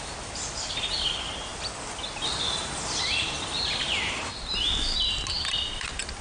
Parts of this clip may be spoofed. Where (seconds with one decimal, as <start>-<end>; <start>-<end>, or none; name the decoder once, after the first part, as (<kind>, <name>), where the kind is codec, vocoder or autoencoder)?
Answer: none